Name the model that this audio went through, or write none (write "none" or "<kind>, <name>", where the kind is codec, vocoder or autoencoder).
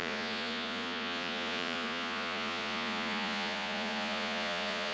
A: vocoder, Vocos